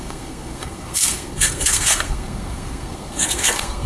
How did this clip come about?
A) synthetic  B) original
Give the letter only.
A